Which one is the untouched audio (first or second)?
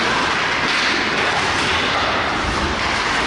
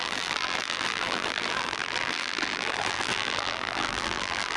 first